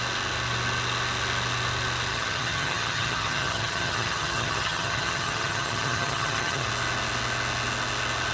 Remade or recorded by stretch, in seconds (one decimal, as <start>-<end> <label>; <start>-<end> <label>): 0.0-2.1 recorded; 2.1-6.7 remade; 6.7-8.3 recorded